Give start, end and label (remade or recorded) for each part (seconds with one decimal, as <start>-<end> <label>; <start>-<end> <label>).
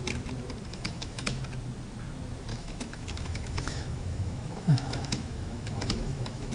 0.0-0.7 recorded; 0.7-1.4 remade; 1.4-2.5 recorded; 2.5-6.5 remade